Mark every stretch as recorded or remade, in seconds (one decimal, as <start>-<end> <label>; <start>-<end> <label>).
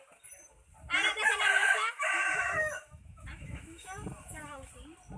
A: 0.0-1.6 recorded; 1.6-4.7 remade; 4.7-5.2 recorded